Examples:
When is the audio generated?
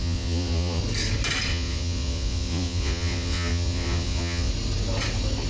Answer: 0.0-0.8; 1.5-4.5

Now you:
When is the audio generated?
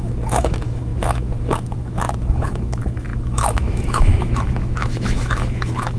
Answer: 0.0-6.0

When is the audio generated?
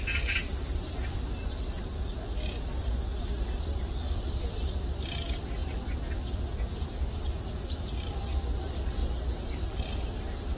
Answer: 6.9-8.0; 9.0-10.6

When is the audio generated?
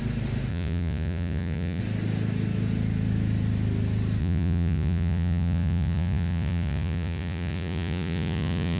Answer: 0.5-1.8; 4.2-8.8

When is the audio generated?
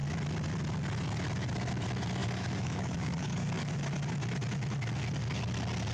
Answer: 2.2-3.7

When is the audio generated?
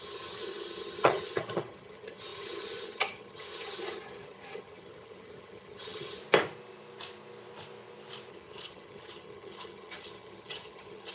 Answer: 0.0-6.2; 8.3-11.1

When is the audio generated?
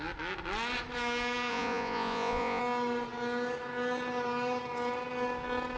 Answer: 1.5-2.6